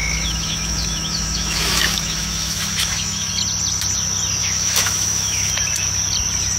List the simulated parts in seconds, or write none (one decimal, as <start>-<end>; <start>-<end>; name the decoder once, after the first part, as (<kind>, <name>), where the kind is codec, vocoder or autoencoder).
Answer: 0.0-3.3 (autoencoder, DAC-VAE); 4.4-5.5